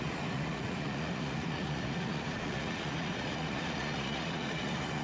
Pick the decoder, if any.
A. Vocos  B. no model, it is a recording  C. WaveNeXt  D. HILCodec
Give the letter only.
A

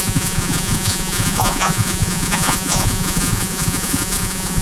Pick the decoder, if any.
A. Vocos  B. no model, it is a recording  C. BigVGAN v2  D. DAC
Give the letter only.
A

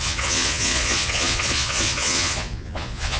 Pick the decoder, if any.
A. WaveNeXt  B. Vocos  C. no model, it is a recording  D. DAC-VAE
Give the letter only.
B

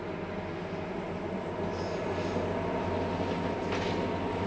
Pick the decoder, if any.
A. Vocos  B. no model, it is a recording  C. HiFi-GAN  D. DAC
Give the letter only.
B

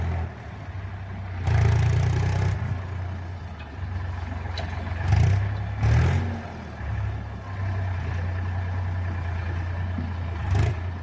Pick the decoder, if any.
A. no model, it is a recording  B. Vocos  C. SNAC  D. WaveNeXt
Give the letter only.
A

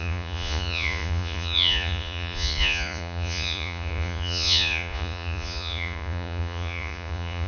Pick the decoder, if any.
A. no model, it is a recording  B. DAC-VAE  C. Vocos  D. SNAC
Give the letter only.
C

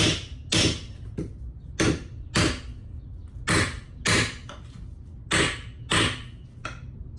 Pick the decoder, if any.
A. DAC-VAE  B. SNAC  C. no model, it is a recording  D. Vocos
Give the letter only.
C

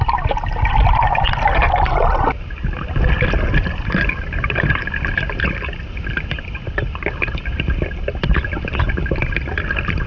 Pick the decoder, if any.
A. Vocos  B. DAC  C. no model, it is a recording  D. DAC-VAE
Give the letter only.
C